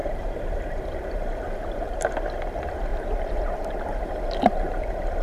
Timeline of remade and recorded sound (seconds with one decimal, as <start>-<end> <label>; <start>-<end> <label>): 0.0-2.1 remade; 2.1-2.9 recorded; 2.9-4.8 remade; 4.8-5.2 recorded